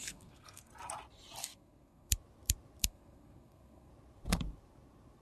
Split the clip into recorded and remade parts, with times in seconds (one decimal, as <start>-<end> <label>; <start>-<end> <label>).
0.0-0.7 remade; 0.7-1.4 recorded; 1.4-2.1 remade; 2.1-2.8 recorded; 2.8-3.9 remade; 3.9-5.2 recorded